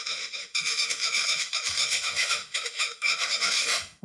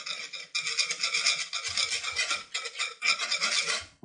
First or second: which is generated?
first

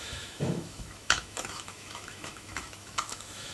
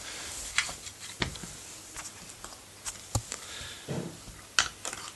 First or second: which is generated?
first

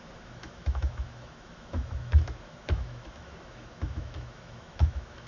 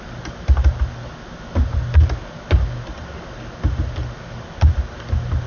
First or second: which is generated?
first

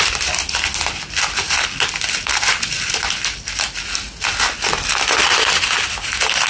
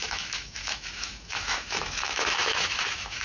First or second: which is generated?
second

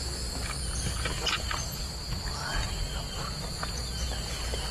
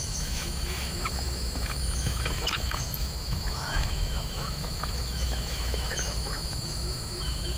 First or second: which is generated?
second